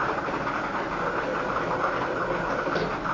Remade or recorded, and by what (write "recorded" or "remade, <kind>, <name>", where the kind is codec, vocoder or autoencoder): recorded